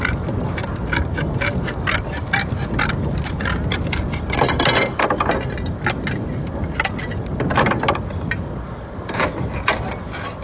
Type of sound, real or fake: real